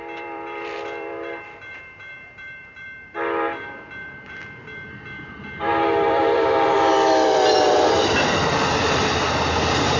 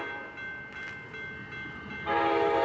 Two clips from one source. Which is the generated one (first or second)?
first